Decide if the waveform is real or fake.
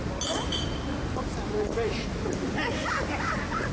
real